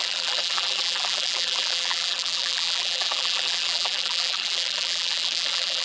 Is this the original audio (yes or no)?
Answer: no